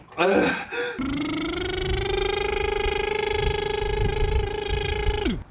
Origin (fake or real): real